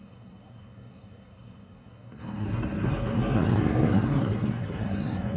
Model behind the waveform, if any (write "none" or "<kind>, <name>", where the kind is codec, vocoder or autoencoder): codec, SNAC